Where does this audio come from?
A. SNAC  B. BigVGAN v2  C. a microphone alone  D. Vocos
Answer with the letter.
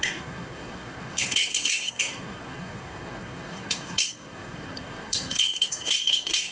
A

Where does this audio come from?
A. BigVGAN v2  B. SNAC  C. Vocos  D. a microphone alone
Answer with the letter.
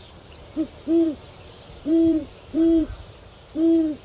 A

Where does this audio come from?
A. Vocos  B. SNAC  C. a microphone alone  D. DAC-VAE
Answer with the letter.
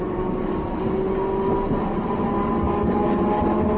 C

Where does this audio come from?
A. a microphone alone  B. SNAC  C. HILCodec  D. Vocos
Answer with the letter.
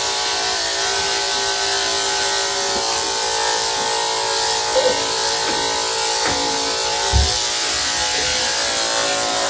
A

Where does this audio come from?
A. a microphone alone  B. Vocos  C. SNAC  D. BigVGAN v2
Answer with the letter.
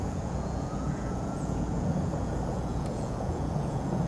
B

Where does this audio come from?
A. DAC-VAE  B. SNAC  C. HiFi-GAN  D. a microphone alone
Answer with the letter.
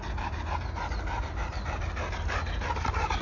D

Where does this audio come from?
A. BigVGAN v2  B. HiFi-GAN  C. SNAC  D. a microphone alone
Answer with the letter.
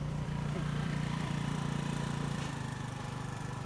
A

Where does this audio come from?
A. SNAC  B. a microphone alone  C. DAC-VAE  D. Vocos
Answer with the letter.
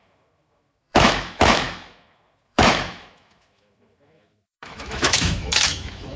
C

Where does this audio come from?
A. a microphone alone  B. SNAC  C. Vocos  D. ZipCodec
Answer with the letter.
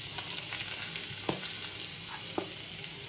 A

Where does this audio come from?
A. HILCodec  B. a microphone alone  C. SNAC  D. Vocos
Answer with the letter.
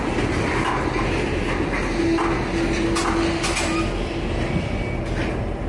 B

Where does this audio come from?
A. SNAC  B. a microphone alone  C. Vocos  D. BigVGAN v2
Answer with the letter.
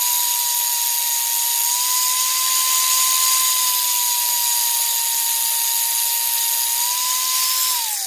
B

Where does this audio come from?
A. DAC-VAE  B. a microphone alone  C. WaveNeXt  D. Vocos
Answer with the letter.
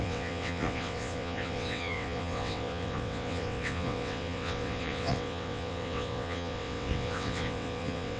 C